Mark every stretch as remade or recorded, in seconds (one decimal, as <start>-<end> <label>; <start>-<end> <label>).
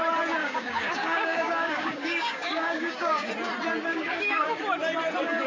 0.0-0.4 recorded; 0.4-3.3 remade; 3.3-3.9 recorded; 3.9-4.6 remade; 4.6-5.5 recorded